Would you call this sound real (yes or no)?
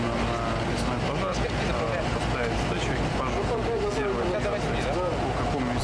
yes